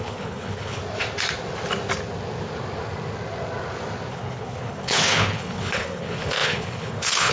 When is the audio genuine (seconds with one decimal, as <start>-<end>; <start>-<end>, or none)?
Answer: 0.8-4.1